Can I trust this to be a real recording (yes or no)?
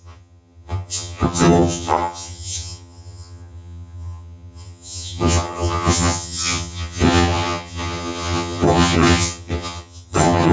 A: no